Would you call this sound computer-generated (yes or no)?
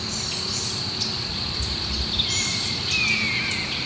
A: no